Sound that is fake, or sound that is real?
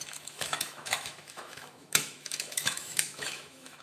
fake